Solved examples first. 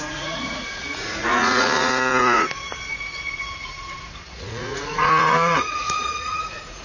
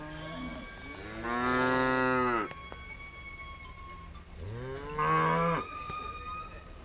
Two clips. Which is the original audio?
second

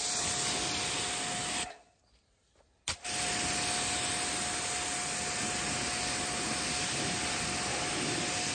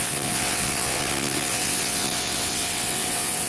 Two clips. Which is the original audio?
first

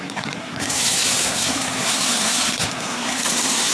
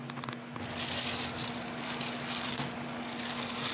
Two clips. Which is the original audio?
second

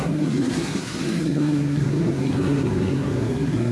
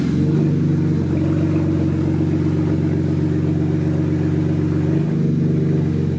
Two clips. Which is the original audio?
second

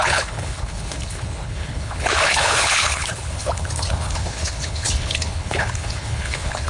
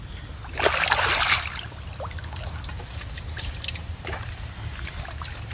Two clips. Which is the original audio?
second